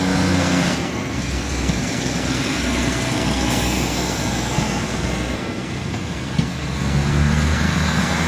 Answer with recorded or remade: remade